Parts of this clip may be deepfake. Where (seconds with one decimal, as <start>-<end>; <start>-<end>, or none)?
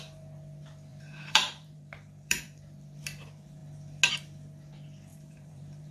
0.9-3.0; 5.1-5.9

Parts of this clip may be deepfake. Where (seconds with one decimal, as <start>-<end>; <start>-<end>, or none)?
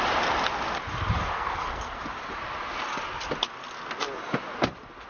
1.2-2.0